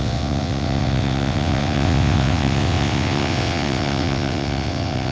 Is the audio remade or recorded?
remade